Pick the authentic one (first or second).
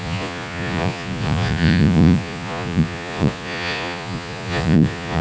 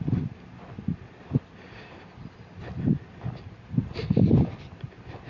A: second